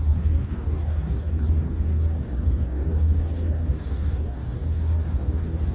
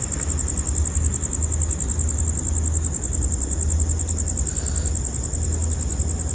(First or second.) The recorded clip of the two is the second